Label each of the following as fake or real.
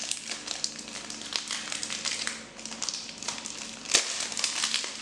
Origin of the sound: real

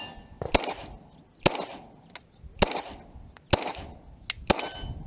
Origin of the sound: real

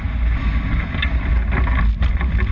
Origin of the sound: real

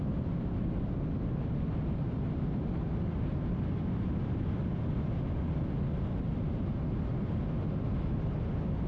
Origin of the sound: real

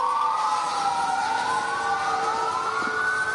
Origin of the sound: real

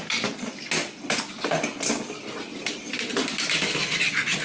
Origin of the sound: real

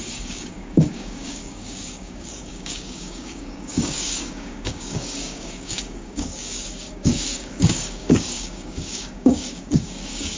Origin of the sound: fake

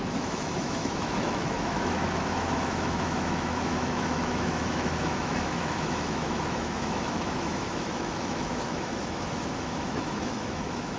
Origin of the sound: fake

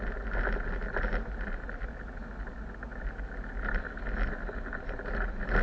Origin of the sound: real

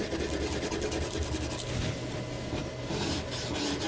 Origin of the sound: real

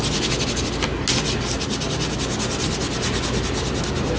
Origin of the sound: real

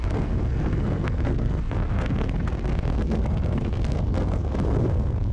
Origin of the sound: fake